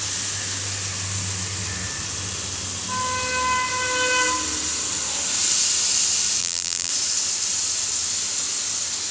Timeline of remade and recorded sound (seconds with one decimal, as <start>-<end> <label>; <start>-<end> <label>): 0.0-6.4 recorded; 6.4-6.9 remade; 6.9-9.1 recorded